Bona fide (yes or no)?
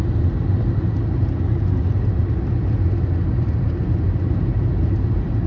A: yes